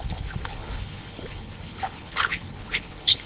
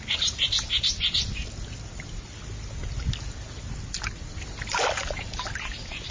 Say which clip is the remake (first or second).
first